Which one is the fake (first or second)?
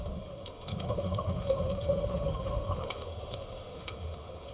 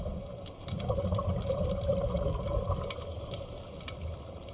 first